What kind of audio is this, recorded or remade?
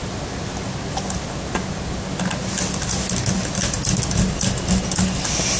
recorded